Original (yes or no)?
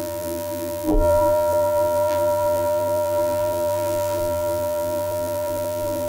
no